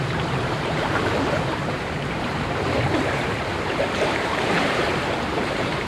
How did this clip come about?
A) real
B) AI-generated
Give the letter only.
B